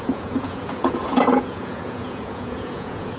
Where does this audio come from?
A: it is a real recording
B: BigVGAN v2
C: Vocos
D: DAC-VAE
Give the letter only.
C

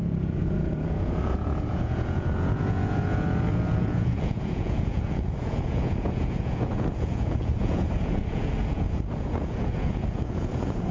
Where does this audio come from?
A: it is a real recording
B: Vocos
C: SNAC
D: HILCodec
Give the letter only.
B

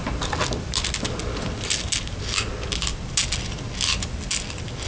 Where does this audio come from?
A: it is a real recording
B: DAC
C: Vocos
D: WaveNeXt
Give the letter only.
A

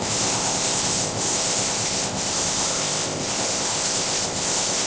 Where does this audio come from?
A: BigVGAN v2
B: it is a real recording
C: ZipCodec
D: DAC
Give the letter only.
C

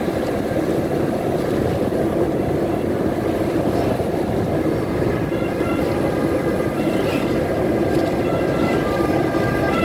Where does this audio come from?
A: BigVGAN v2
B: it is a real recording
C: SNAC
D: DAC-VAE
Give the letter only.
B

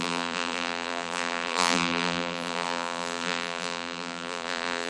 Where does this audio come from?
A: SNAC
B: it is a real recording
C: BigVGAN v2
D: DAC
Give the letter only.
C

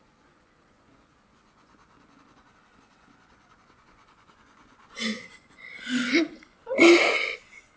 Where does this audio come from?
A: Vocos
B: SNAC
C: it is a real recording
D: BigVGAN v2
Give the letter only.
A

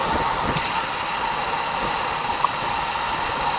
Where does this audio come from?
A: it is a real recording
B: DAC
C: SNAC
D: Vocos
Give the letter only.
A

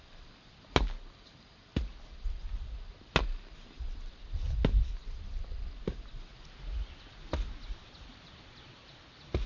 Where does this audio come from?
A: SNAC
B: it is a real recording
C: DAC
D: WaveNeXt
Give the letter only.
B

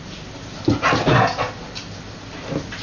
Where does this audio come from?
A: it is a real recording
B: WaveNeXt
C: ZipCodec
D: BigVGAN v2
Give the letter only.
A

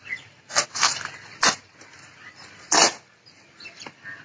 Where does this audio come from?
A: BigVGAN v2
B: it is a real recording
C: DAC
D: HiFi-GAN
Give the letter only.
B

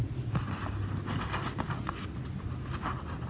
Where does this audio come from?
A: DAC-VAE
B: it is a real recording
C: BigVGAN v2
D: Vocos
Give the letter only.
B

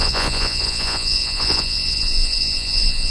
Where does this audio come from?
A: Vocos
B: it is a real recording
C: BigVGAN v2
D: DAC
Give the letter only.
A